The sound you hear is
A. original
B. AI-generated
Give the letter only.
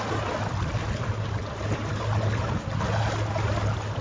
A